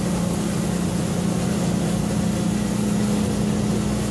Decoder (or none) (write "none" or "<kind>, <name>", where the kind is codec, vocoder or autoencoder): none